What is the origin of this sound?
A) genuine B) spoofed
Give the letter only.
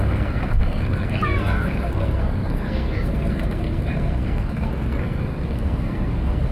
B